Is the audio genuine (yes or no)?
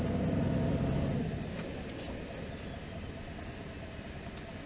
yes